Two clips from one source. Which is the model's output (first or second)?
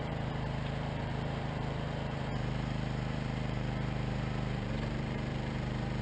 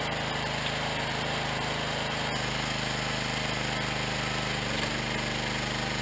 first